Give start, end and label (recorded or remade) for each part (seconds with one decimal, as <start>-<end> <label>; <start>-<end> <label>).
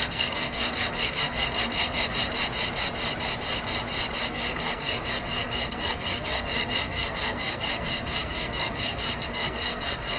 0.0-2.3 remade; 2.3-4.3 recorded; 4.3-10.2 remade